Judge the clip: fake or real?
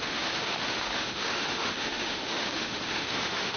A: fake